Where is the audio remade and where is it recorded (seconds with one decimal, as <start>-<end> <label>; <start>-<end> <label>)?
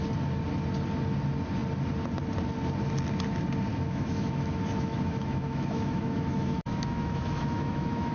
0.0-3.7 recorded; 3.7-8.1 remade